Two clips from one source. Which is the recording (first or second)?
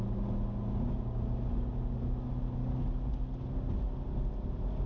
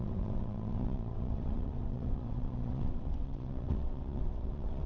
first